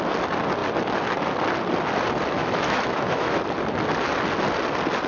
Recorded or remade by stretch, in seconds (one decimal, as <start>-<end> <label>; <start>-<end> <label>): 0.0-2.4 recorded; 2.4-3.4 remade; 3.4-5.1 recorded